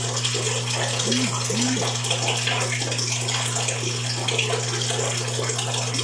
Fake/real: real